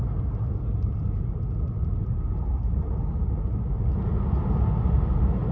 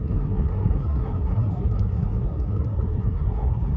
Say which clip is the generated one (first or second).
second